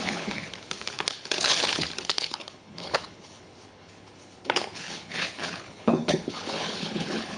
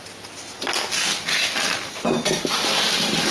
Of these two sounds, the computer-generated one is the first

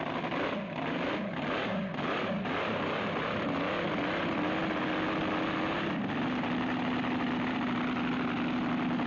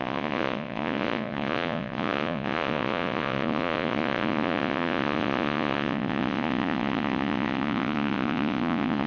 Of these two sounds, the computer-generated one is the second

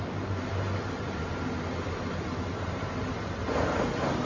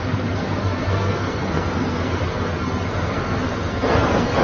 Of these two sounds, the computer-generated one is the second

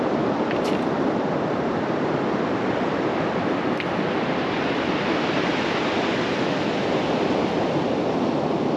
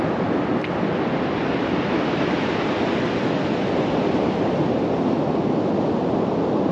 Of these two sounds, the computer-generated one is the first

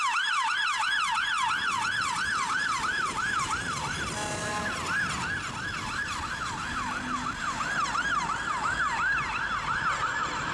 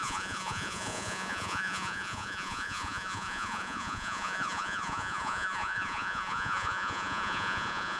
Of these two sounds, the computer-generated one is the second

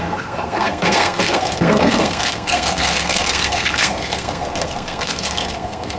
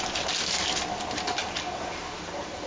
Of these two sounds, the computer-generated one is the first